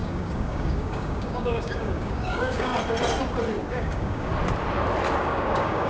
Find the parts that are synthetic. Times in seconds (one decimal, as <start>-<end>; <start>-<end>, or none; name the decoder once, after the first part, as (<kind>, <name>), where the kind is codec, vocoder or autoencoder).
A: 0.0-2.7 (codec, DAC); 3.7-4.3; 5.2-5.9